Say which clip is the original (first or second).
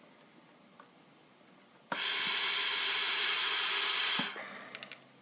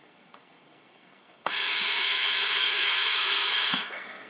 first